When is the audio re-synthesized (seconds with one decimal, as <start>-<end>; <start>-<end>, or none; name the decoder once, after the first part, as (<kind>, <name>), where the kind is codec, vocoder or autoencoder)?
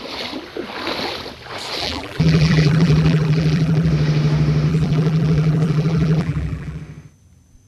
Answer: 1.8-3.9 (vocoder, BigVGAN v2); 4.7-6.8